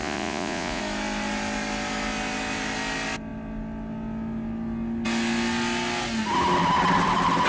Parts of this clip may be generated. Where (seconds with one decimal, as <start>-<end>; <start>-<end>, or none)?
0.0-0.8